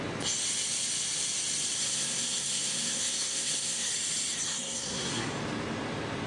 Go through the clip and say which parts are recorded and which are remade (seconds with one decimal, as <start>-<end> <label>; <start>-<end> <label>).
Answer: 0.0-1.8 recorded; 1.8-3.9 remade; 3.9-4.5 recorded; 4.5-5.3 remade; 5.3-6.3 recorded